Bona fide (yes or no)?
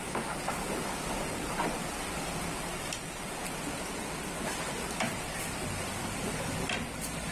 yes